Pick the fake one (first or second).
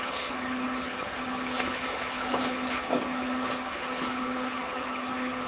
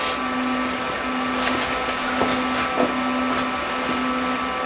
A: first